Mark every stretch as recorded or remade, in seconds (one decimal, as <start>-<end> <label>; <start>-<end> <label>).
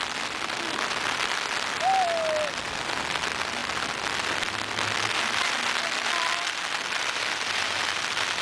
0.0-8.4 recorded